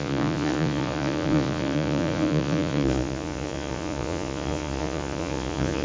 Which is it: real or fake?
fake